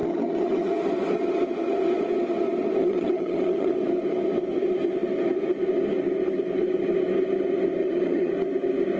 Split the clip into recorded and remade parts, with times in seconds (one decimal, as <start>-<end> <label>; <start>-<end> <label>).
0.0-0.7 remade; 0.7-2.8 recorded; 2.8-3.7 remade; 3.7-7.8 recorded; 7.8-8.3 remade; 8.3-9.0 recorded